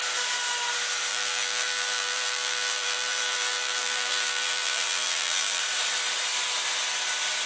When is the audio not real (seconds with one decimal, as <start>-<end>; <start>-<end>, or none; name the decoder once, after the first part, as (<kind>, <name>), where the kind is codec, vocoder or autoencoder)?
1.1-5.6 (vocoder, BigVGAN v2)